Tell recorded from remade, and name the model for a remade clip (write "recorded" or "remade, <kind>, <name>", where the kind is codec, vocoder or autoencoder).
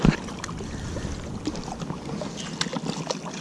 recorded